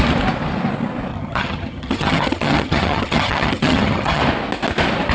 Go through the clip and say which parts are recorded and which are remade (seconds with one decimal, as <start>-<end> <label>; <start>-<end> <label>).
0.0-1.1 recorded; 1.1-4.2 remade; 4.2-5.1 recorded